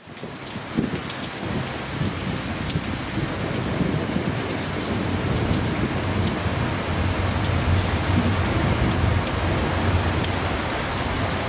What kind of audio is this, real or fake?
real